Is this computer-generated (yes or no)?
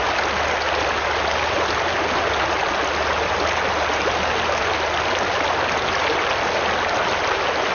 no